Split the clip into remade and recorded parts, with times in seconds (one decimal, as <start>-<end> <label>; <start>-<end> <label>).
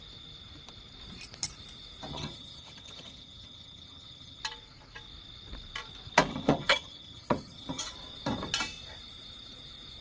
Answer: 0.0-2.1 recorded; 2.1-4.4 remade; 4.4-6.3 recorded; 6.3-7.8 remade; 7.8-10.0 recorded